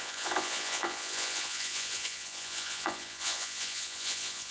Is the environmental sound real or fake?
fake